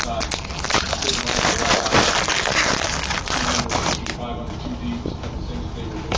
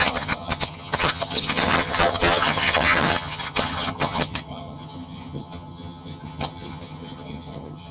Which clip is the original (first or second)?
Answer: first